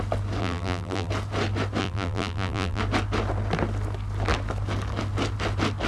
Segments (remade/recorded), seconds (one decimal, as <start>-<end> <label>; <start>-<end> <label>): 0.0-0.4 recorded; 0.4-1.1 remade; 1.1-1.8 recorded; 1.8-2.8 remade; 2.8-5.9 recorded